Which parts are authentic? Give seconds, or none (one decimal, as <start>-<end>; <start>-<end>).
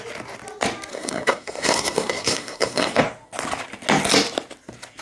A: 0.0-0.9; 3.0-5.0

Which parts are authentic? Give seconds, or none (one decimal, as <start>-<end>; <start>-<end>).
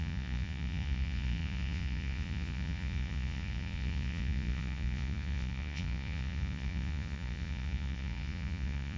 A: none